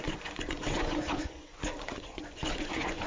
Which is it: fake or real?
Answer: fake